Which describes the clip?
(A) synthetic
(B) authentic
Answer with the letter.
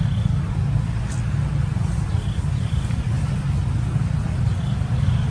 B